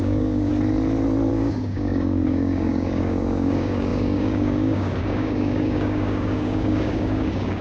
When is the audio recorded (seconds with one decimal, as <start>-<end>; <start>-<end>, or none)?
0.5-1.3